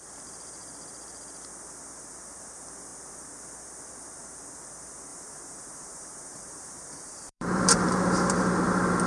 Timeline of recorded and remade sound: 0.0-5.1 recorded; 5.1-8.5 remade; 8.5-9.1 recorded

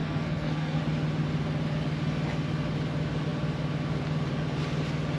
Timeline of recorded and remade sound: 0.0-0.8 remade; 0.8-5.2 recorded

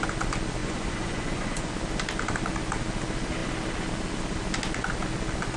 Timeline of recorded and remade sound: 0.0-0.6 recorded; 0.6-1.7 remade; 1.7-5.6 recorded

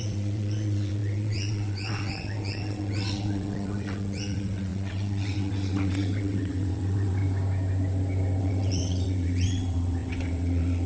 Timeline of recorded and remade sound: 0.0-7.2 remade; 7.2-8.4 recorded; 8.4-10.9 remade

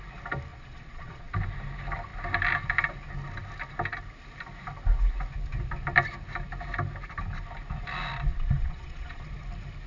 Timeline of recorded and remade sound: 0.0-0.5 recorded; 0.5-1.3 remade; 1.3-8.3 recorded; 8.3-9.3 remade; 9.3-9.9 recorded

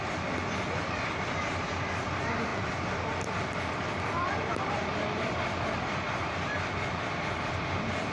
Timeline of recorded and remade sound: 0.0-8.1 recorded

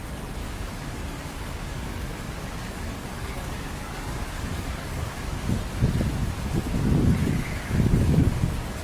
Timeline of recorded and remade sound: 0.0-0.4 recorded; 0.4-5.5 remade; 5.5-7.2 recorded; 7.2-8.8 remade

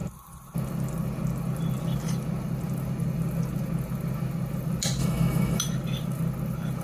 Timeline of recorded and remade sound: 0.0-5.0 recorded; 5.0-5.6 remade; 5.6-6.8 recorded